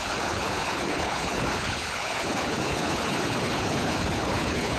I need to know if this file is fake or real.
fake